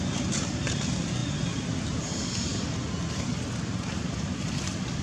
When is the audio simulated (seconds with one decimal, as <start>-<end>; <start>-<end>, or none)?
none